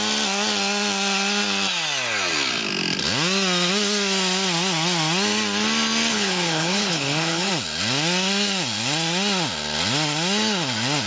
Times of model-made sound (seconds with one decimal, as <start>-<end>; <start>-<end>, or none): 6.1-7.5

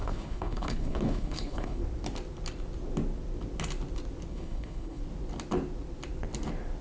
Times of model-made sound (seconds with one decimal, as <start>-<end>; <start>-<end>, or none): 0.0-1.8; 4.3-5.0

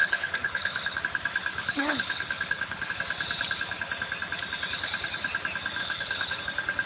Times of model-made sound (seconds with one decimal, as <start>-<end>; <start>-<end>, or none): 0.0-1.0; 1.5-2.9; 5.8-6.4

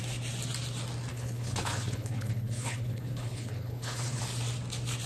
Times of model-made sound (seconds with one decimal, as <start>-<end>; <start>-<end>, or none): 1.1-4.2

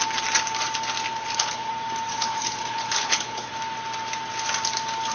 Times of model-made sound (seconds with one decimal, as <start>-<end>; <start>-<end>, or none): 1.1-1.7; 2.1-3.5